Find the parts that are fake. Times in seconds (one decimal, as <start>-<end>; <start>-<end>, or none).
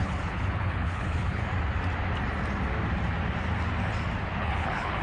0.0-1.4; 4.4-5.0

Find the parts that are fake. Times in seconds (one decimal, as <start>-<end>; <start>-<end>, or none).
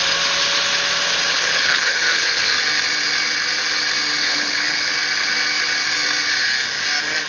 1.3-2.5; 4.2-4.9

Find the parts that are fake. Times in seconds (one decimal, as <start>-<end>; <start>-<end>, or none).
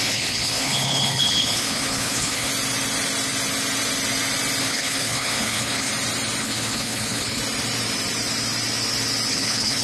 0.0-2.5; 4.6-5.9; 6.4-7.4; 9.3-9.8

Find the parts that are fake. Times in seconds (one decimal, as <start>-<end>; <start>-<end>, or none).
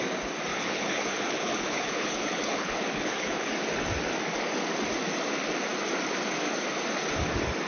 0.5-3.5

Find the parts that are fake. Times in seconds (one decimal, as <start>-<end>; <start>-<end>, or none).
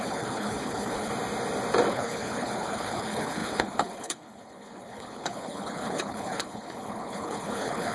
0.0-1.1; 1.9-7.9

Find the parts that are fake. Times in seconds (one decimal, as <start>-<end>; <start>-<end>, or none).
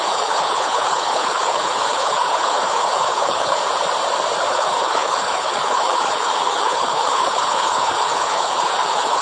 0.0-3.6; 4.5-9.2